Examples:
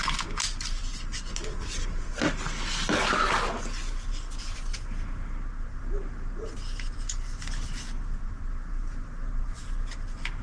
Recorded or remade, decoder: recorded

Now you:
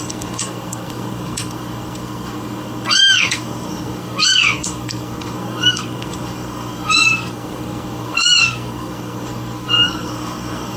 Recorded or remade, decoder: remade, codec, SNAC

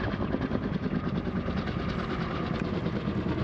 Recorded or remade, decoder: recorded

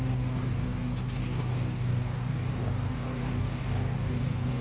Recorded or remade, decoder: remade, codec, DAC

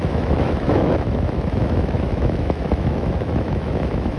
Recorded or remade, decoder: remade, autoencoder, DAC-VAE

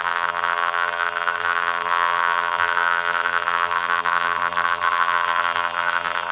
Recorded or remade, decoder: remade, vocoder, BigVGAN v2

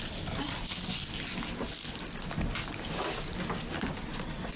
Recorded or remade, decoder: recorded